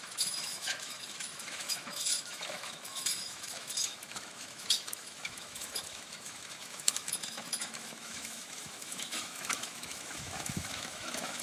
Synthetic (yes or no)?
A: yes